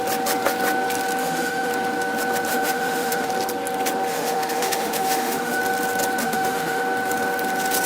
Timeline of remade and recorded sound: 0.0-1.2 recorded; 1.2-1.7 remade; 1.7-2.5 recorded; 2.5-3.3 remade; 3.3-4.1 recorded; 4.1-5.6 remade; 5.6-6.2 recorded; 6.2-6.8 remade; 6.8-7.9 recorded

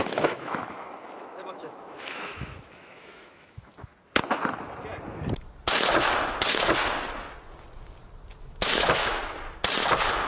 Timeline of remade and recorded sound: 0.0-3.9 remade; 3.9-8.4 recorded; 8.4-9.2 remade; 9.2-10.3 recorded

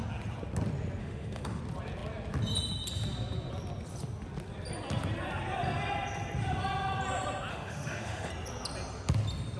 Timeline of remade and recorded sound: 0.0-1.0 recorded; 1.0-1.6 remade; 1.6-7.5 recorded; 7.5-8.3 remade; 8.3-9.6 recorded

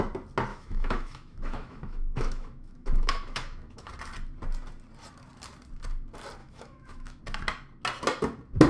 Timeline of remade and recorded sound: 0.0-0.5 recorded; 0.5-3.9 remade; 3.9-6.4 recorded; 6.4-7.2 remade; 7.2-8.7 recorded

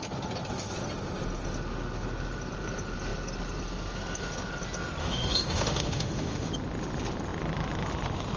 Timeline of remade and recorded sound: 0.0-5.0 recorded; 5.0-6.5 remade; 6.5-8.4 recorded

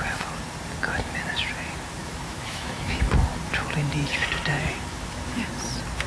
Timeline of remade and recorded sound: 0.0-2.0 recorded; 2.0-3.1 remade; 3.1-4.9 recorded; 4.9-5.5 remade; 5.5-6.1 recorded

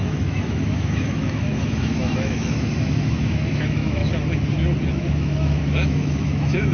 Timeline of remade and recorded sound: 0.0-4.0 remade; 4.0-4.9 recorded; 4.9-6.7 remade